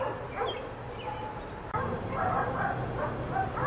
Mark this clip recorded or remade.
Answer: recorded